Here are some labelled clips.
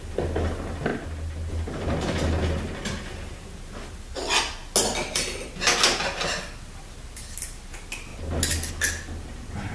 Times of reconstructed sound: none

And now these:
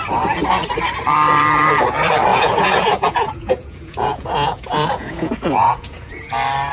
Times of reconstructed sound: 2.3-6.3 (vocoder, Vocos)

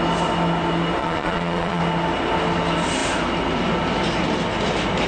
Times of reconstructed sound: 1.0-1.8 (vocoder, Vocos)